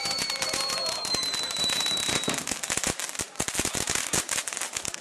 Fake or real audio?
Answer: fake